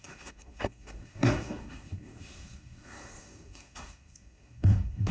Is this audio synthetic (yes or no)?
yes